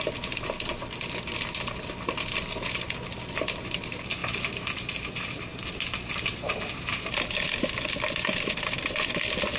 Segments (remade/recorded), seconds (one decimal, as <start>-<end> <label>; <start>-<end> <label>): 0.0-9.6 recorded